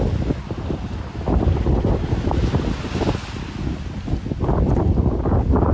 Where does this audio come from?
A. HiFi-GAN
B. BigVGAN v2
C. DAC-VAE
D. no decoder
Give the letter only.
D